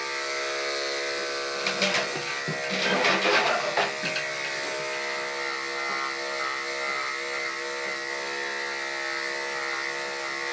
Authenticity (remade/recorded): recorded